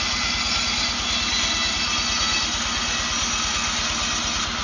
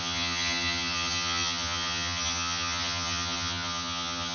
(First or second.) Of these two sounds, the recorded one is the first